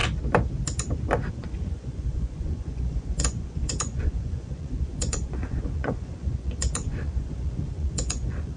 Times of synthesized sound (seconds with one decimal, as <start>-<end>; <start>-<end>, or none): 1.3-8.6